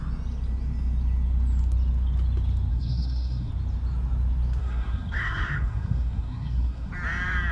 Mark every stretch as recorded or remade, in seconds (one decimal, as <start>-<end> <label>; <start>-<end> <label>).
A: 0.0-2.7 recorded; 2.7-3.5 remade; 3.5-4.6 recorded; 4.6-6.9 remade; 6.9-7.5 recorded